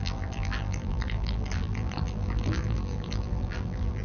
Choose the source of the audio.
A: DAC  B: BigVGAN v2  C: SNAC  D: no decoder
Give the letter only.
B